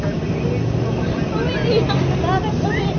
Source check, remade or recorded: recorded